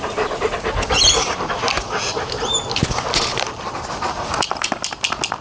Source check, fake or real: real